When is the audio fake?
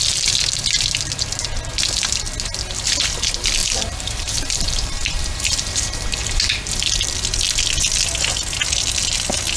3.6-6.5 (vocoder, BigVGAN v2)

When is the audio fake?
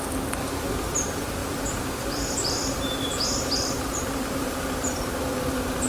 1.4-4.9 (vocoder, BigVGAN v2)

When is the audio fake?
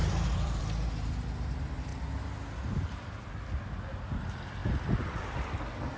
0.0-0.6 (vocoder, BigVGAN v2)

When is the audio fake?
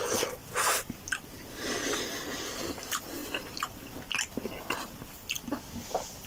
none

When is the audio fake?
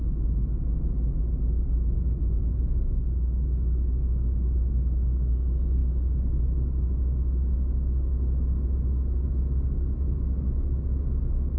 none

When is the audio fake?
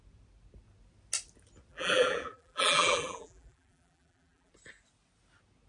1.7-4.5 (vocoder, BigVGAN v2)